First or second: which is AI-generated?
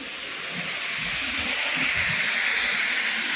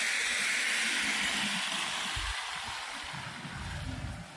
first